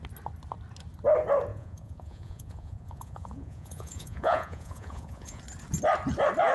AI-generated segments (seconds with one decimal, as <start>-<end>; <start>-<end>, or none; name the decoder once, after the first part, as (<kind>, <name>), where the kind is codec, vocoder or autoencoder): 1.5-5.4 (vocoder, Vocos)